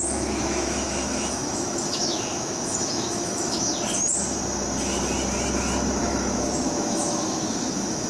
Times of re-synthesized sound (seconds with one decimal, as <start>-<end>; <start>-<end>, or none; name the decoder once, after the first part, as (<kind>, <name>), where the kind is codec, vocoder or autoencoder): 0.0-3.7 (autoencoder, DAC-VAE); 6.0-8.1